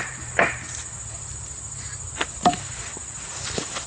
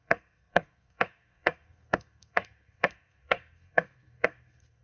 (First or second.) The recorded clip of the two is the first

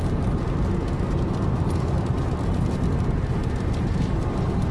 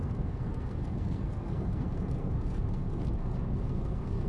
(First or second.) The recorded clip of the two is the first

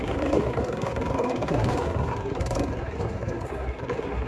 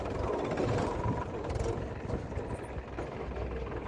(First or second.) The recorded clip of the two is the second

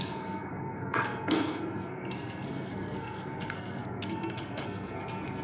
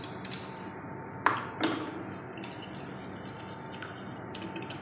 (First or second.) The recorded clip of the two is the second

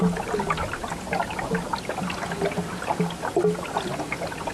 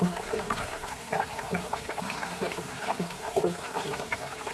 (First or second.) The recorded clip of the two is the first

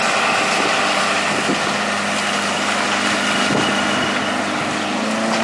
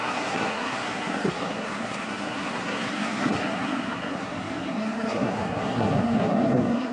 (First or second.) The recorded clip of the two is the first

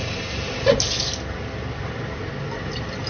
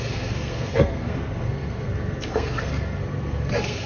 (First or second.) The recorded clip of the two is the first